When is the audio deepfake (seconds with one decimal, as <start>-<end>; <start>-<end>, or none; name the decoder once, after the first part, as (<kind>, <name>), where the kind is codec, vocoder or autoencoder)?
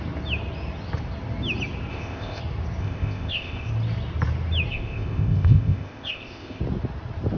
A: 1.9-2.4 (codec, ZipCodec); 2.8-3.7; 4.7-6.6